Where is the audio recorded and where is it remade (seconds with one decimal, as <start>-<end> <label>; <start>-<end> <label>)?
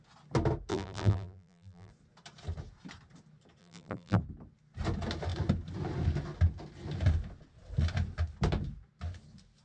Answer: 0.0-0.7 recorded; 0.7-1.9 remade; 1.9-3.6 recorded; 3.6-4.2 remade; 4.2-9.6 recorded